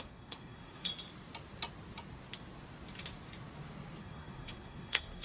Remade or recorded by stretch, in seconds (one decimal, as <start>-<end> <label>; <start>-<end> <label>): 0.0-0.9 remade; 0.9-4.0 recorded; 4.0-5.2 remade